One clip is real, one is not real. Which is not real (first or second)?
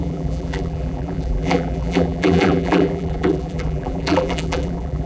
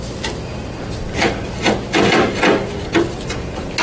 first